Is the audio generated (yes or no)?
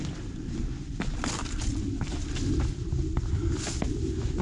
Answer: no